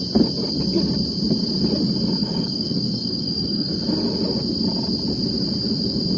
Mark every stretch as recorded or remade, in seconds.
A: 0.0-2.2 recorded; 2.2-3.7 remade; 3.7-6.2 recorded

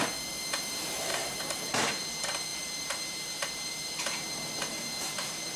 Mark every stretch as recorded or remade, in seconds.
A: 0.0-1.1 recorded; 1.1-2.1 remade; 2.1-2.5 recorded; 2.5-5.6 remade

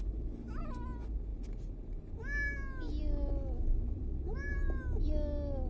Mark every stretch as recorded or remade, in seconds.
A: 0.0-5.7 recorded

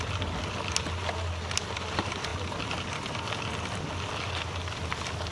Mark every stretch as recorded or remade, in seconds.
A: 0.0-5.3 recorded